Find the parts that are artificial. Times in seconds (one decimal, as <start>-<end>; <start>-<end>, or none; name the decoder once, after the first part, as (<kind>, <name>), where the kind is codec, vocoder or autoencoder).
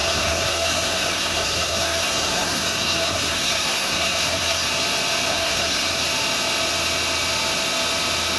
0.0-4.7 (codec, SNAC); 5.3-6.0